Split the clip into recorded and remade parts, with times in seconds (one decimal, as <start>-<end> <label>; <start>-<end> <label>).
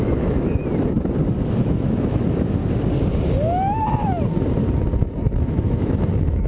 0.0-0.6 remade; 0.6-1.6 recorded; 1.6-2.6 remade; 2.6-5.5 recorded; 5.5-6.5 remade